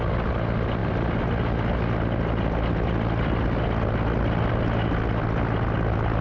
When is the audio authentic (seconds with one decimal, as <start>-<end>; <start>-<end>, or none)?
0.0-6.2